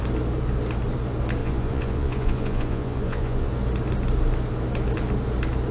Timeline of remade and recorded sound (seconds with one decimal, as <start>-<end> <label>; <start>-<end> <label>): 0.0-1.4 recorded; 1.4-3.5 remade; 3.5-5.7 recorded